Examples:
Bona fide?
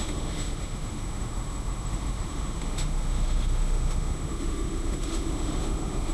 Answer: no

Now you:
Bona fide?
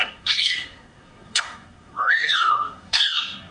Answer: no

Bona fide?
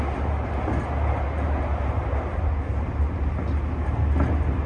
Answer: yes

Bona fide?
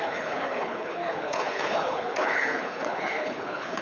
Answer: no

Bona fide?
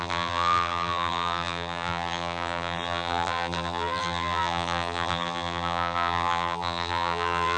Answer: no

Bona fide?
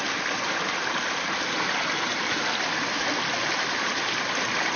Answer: yes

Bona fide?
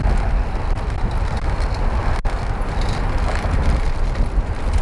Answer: yes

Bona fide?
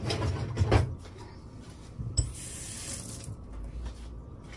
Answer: yes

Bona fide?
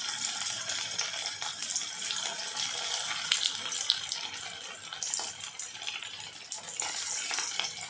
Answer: no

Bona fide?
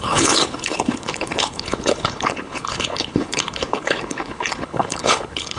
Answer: no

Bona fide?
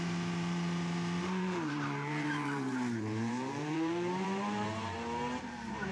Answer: no